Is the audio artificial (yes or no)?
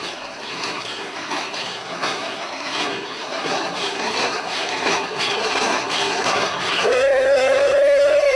yes